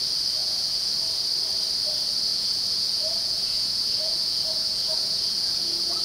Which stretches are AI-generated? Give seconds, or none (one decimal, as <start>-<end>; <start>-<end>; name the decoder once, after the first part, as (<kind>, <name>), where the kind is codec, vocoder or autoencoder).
0.4-0.9 (vocoder, Vocos); 2.3-6.0